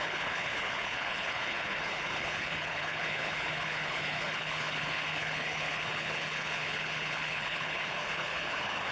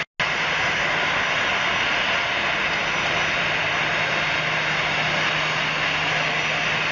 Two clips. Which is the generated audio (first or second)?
first